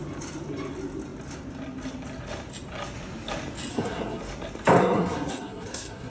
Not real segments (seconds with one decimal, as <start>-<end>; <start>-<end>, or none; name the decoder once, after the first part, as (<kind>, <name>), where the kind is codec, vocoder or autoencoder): 3.7-4.2 (codec, SNAC); 4.8-6.1